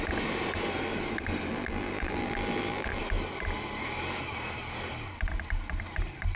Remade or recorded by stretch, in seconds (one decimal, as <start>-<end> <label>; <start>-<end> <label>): 0.0-1.5 recorded; 1.5-3.0 remade; 3.0-6.4 recorded